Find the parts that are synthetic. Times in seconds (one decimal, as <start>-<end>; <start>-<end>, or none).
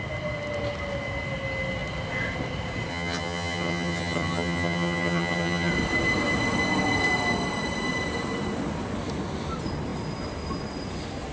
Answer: 2.9-5.7